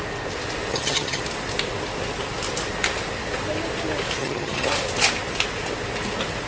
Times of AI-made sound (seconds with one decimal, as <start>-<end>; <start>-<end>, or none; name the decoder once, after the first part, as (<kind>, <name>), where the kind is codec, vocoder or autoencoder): 0.7-1.2 (vocoder, HiFi-GAN); 4.2-4.7